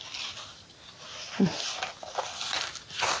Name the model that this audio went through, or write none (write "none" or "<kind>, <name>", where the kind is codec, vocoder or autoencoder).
none